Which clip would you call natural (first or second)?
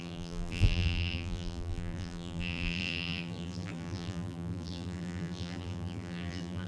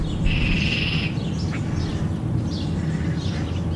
second